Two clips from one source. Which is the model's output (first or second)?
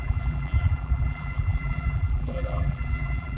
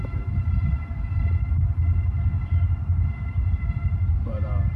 first